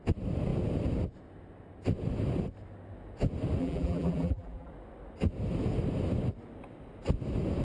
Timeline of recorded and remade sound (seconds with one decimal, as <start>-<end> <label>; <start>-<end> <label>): 0.0-3.6 recorded; 3.6-4.7 remade; 4.7-7.6 recorded